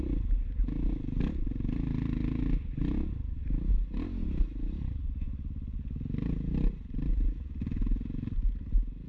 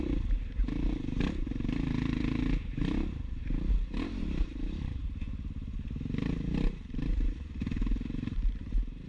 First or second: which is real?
first